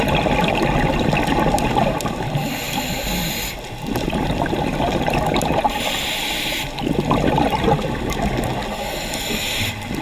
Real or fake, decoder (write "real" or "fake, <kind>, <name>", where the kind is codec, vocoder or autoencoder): real